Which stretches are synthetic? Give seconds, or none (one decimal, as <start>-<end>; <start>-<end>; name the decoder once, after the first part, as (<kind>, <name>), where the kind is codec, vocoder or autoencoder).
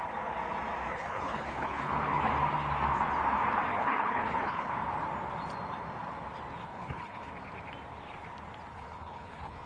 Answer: 0.9-2.3 (codec, HILCodec); 3.7-4.7; 6.6-7.3; 8.7-9.7